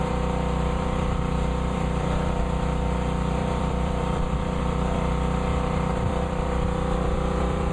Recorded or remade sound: remade